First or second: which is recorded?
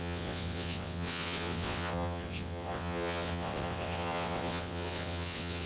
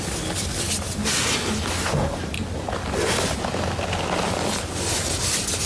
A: second